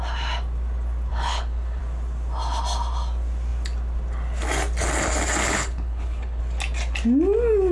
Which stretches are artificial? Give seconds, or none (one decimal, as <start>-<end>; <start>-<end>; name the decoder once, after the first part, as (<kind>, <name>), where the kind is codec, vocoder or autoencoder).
1.1-1.8 (codec, HILCodec); 5.4-6.4